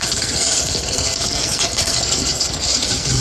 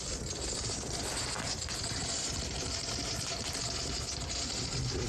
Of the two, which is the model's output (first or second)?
first